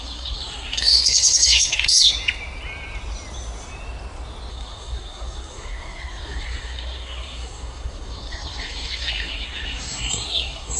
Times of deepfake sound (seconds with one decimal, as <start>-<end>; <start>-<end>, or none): 0.0-2.1; 4.5-10.8